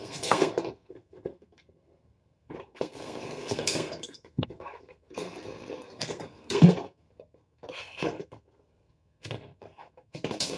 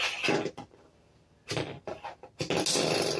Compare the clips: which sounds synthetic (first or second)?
first